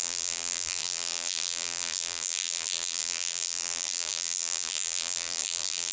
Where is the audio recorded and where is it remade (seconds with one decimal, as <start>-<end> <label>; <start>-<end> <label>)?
0.0-5.9 remade